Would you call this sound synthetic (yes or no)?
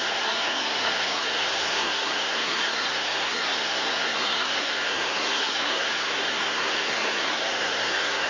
yes